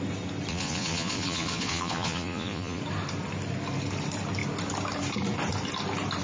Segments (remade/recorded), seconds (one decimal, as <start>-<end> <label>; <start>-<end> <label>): 0.0-0.5 recorded; 0.5-2.8 remade; 2.8-6.2 recorded